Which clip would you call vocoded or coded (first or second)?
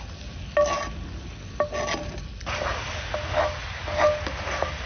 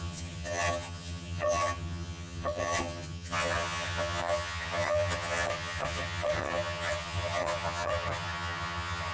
second